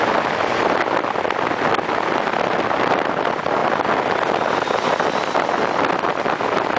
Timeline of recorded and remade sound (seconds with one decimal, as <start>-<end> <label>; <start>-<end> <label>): 0.0-6.8 recorded